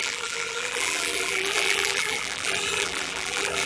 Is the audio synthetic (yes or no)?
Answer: yes